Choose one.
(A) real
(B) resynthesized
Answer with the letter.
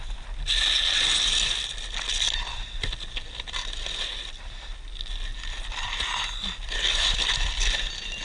A